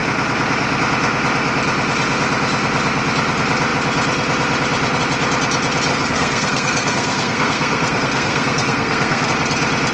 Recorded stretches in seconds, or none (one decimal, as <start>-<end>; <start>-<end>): 0.0-5.9; 9.3-9.9